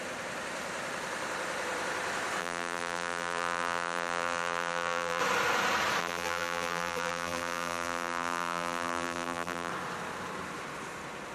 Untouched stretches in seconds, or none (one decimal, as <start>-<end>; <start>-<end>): 0.0-2.4; 5.2-6.0; 9.7-11.3